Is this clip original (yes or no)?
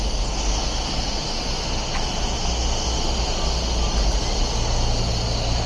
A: yes